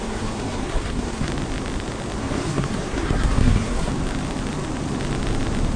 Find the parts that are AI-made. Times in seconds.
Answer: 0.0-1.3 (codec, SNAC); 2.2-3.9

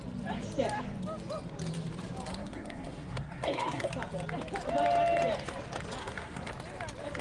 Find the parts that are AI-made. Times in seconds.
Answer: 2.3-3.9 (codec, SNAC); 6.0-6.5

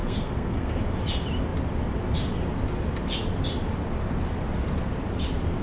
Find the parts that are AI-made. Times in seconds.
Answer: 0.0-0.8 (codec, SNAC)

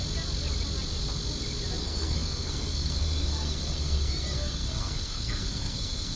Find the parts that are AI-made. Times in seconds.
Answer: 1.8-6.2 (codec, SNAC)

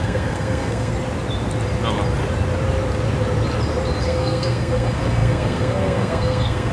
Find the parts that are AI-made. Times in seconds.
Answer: 0.0-0.9 (codec, SNAC); 4.0-6.7

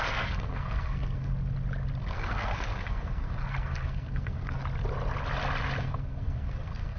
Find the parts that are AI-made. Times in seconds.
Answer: 0.0-1.3 (codec, SNAC); 2.0-4.6; 5.8-7.0